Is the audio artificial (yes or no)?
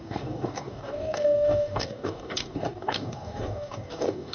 yes